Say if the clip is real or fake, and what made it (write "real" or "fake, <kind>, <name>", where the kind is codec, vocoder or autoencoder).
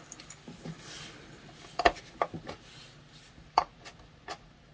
real